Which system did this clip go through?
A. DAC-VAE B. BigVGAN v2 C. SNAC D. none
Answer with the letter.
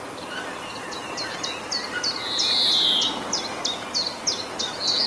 D